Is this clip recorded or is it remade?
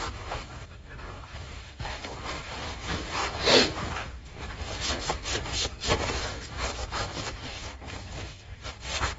remade